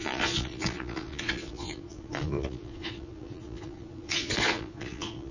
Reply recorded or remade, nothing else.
remade